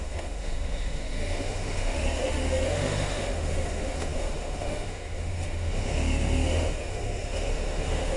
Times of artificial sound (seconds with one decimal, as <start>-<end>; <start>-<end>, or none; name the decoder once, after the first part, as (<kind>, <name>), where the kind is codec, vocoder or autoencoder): 0.0-8.2 (autoencoder, DAC-VAE)